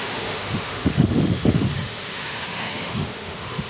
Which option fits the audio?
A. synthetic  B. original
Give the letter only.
A